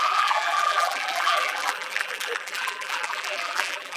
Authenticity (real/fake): fake